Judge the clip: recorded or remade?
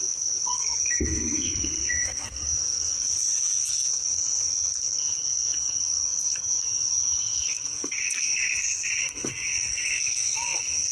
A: remade